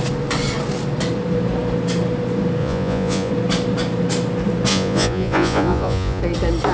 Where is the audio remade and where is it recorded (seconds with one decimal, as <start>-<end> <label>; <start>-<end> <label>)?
0.0-2.6 recorded; 2.6-3.3 remade; 3.3-4.7 recorded; 4.7-6.2 remade; 6.2-6.7 recorded